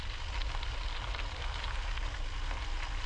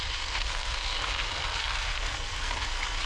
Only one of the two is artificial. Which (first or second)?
second